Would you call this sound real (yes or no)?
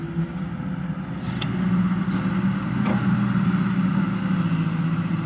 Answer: yes